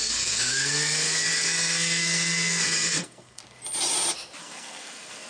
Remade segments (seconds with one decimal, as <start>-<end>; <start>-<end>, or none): 0.0-3.4; 4.4-5.3